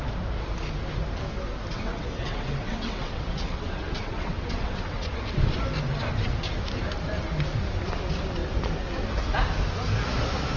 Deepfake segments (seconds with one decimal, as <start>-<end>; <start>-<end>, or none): 1.7-5.1